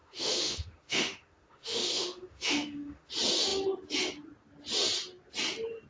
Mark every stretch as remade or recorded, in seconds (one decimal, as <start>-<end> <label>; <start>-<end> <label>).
0.0-3.1 remade; 3.1-5.9 recorded